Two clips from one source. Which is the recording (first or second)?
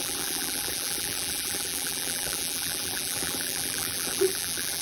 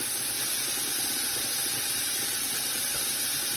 second